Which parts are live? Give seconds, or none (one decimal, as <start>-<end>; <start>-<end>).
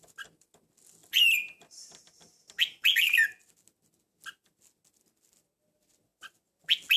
0.0-7.0